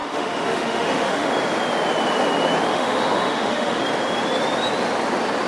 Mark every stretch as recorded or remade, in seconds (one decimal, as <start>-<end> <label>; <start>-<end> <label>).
0.0-1.3 remade; 1.3-2.7 recorded; 2.7-3.8 remade; 3.8-5.5 recorded